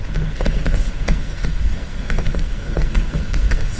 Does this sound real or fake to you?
fake